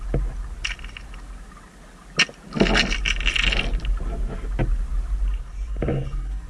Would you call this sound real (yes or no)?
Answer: yes